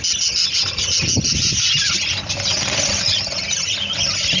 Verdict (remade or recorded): recorded